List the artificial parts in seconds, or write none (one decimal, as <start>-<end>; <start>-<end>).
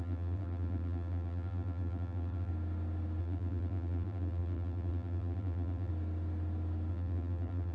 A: 0.0-2.5; 3.2-5.9; 6.9-7.7